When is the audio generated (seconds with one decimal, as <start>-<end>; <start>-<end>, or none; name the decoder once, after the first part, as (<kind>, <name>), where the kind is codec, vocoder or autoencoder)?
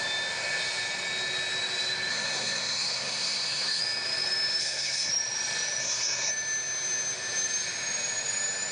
2.1-3.8 (codec, SNAC); 4.6-5.1; 5.8-6.3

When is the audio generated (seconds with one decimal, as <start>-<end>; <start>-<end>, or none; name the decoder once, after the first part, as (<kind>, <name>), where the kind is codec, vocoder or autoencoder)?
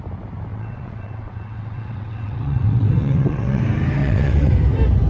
0.5-3.6 (vocoder, WaveNeXt); 4.0-4.5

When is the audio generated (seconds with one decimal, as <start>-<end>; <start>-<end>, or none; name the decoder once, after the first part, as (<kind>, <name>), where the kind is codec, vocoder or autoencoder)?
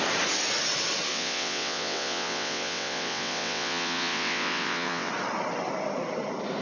1.1-5.1 (vocoder, WaveNeXt)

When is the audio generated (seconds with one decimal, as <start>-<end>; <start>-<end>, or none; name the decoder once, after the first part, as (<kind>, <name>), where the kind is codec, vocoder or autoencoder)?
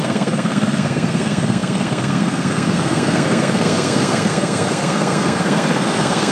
0.0-6.3 (codec, SNAC)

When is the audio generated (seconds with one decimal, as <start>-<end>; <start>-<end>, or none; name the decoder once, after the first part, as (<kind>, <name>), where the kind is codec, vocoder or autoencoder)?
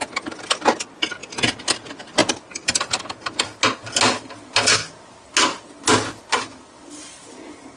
none